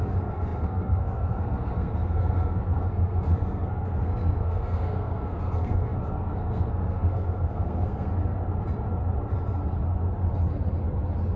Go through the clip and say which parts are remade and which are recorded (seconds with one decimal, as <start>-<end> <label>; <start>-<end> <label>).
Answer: 0.0-8.1 remade; 8.1-11.4 recorded